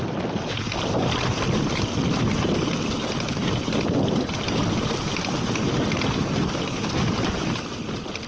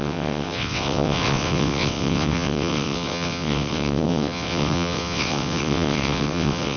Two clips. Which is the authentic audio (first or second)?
first